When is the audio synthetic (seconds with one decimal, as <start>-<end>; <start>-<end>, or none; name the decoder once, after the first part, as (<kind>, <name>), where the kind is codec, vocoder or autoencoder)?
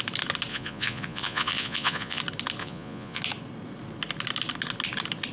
0.5-2.2 (vocoder, Vocos); 2.6-3.2